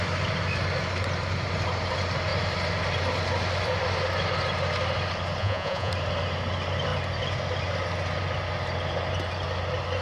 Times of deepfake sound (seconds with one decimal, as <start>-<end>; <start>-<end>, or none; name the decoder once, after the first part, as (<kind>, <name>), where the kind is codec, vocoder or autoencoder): 5.4-5.9 (vocoder, Vocos)